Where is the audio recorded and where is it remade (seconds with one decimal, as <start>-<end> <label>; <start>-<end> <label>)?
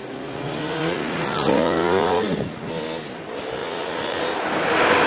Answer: 0.0-2.7 remade; 2.7-3.6 recorded; 3.6-4.2 remade; 4.2-5.1 recorded